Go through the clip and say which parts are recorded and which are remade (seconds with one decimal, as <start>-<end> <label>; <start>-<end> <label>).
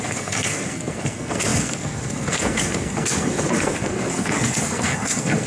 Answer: 0.0-5.5 remade